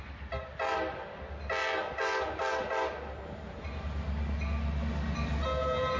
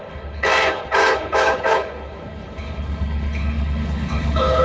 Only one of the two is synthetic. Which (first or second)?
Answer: second